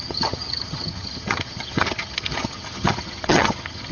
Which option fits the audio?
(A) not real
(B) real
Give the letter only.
A